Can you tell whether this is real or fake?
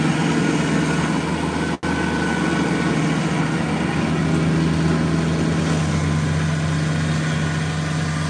real